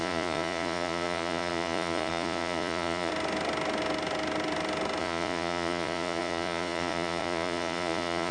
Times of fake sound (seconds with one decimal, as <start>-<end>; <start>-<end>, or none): 0.0-3.1; 5.0-8.3